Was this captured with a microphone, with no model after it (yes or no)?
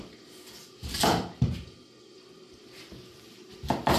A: yes